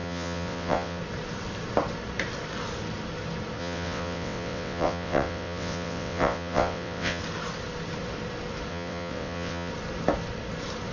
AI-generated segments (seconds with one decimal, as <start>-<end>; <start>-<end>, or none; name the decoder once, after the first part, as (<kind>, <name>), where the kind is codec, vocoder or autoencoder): 0.0-1.0 (vocoder, WaveNeXt); 3.6-7.2; 8.7-9.7